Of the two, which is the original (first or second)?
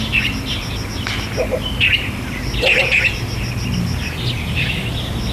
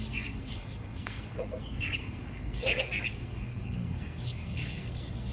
first